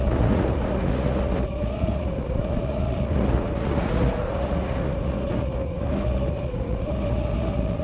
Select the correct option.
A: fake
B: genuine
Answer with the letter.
A